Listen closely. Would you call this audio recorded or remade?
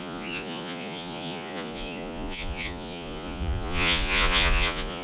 remade